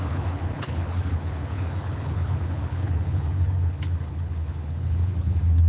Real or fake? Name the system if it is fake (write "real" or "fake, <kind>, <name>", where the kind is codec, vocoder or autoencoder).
fake, codec, HILCodec